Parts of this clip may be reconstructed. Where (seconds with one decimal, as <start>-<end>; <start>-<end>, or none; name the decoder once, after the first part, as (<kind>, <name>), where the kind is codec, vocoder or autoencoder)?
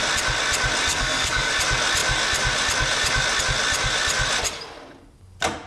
0.9-1.5 (codec, SNAC)